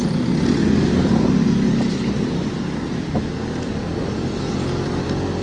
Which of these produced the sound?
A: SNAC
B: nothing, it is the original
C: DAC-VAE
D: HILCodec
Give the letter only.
B